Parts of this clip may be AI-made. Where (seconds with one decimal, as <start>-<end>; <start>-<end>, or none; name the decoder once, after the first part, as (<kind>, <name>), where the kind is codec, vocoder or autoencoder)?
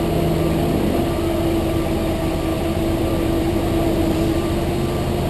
2.5-4.7 (vocoder, BigVGAN v2)